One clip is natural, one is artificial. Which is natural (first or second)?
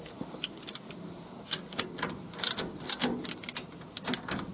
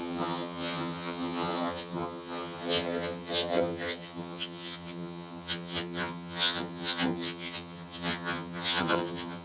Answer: first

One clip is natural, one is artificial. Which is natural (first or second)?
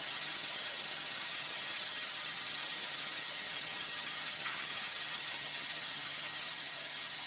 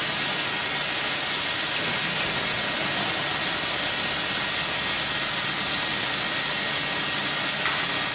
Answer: second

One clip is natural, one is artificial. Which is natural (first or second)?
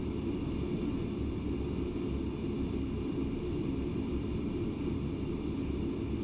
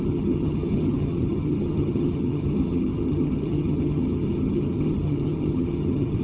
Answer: first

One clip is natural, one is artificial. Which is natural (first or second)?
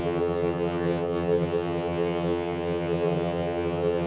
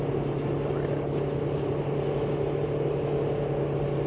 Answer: second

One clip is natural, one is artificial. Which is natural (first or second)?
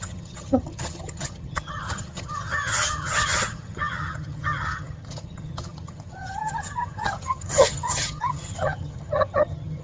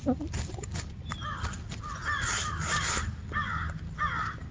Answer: second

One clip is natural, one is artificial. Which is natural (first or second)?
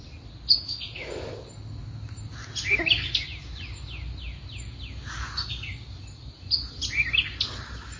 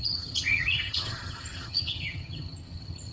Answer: first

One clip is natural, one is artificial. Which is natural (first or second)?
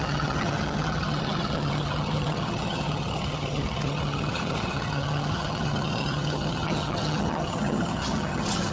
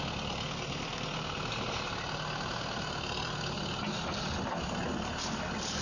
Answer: second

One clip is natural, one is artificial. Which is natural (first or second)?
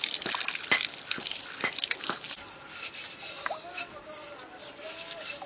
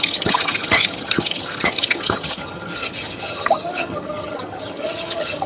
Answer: first